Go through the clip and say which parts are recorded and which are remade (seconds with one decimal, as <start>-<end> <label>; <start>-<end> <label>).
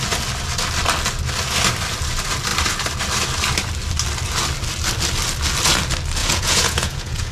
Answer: 0.0-6.2 recorded; 6.2-7.3 remade